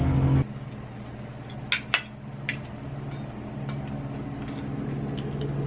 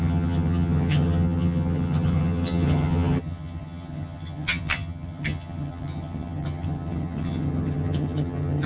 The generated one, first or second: second